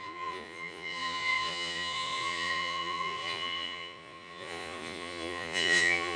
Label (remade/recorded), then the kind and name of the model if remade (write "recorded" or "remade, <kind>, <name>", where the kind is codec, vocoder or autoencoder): remade, vocoder, Vocos